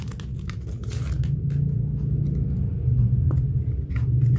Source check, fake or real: real